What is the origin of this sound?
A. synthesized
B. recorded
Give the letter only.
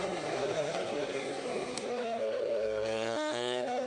A